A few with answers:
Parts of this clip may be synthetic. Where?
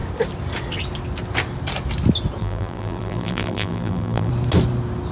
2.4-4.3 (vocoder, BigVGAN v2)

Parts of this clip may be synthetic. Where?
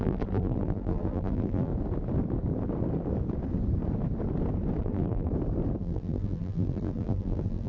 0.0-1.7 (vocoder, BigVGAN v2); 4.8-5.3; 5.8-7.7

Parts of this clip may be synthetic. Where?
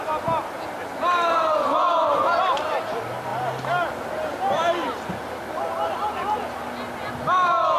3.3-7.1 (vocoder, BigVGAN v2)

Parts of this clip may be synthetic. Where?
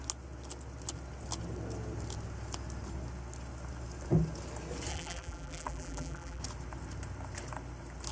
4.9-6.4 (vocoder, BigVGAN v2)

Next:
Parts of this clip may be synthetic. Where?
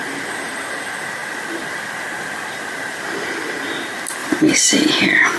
4.2-4.9 (vocoder, BigVGAN v2)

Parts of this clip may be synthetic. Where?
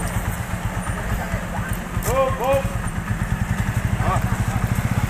none